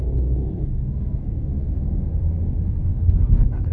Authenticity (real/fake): fake